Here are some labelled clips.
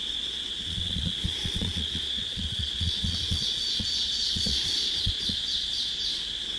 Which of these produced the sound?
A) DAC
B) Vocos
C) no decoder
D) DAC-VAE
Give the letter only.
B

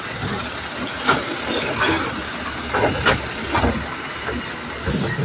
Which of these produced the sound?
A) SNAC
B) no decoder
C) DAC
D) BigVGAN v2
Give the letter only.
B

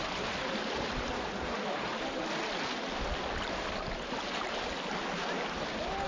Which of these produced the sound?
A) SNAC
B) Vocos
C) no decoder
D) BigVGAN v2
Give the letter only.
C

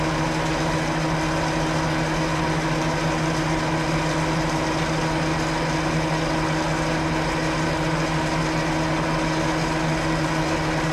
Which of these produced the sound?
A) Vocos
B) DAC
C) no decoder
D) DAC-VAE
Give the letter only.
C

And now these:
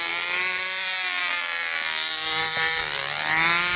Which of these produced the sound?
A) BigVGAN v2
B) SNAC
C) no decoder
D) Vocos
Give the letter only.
C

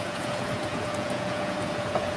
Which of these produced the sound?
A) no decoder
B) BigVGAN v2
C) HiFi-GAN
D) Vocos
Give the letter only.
D